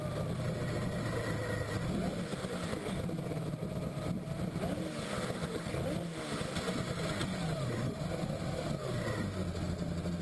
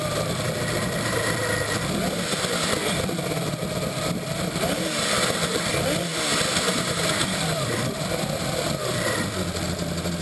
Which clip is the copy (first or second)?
second